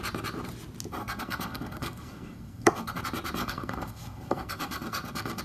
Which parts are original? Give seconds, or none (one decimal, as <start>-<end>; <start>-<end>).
0.0-1.0; 3.0-3.4